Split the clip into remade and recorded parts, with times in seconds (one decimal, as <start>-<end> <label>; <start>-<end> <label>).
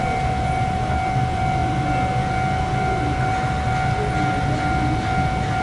0.0-5.6 recorded